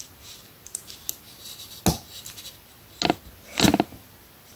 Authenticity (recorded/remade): recorded